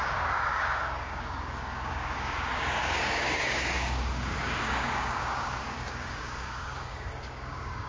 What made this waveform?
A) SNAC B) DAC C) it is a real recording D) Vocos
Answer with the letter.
B